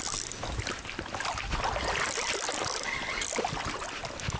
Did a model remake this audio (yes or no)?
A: no